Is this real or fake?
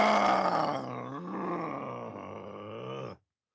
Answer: real